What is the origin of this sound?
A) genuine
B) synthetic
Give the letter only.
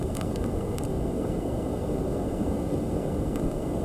B